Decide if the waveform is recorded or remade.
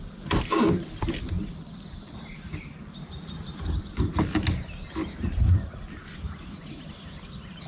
recorded